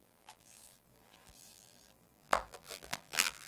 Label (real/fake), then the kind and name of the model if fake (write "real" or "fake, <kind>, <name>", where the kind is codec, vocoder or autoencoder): fake, vocoder, BigVGAN v2